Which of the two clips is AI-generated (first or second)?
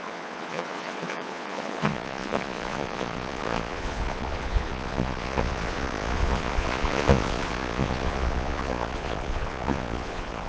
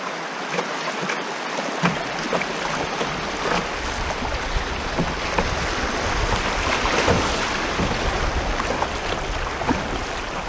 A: first